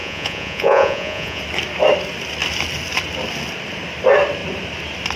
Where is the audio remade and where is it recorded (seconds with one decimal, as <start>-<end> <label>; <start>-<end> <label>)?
0.0-1.4 remade; 1.4-5.2 recorded